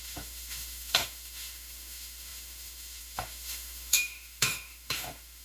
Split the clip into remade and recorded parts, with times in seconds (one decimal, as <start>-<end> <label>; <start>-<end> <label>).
0.0-5.4 remade